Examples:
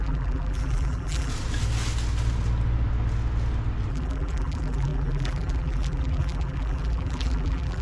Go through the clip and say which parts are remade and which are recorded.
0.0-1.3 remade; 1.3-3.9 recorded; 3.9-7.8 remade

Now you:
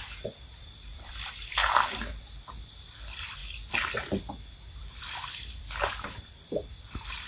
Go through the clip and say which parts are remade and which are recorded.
0.0-3.4 remade; 3.4-4.7 recorded; 4.7-7.3 remade